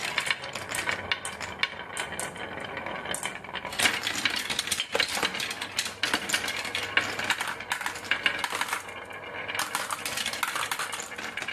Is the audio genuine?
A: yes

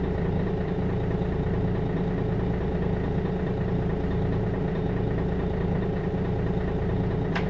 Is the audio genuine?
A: yes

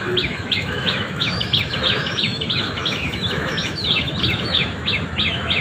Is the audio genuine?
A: no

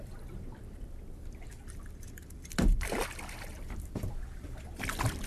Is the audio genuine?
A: no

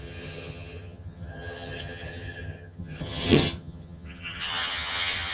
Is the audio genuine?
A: no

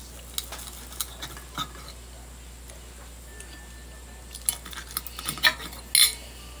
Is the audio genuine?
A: yes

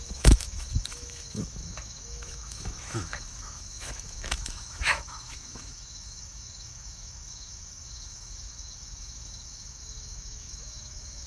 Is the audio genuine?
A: no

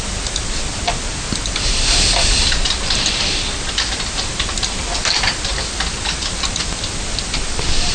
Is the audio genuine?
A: yes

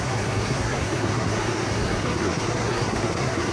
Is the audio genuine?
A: no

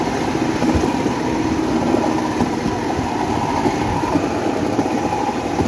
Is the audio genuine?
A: yes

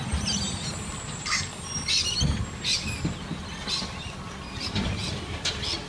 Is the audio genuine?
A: yes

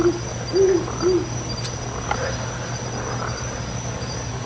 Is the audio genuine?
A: yes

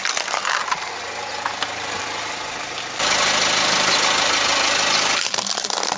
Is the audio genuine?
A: yes